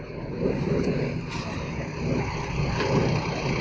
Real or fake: real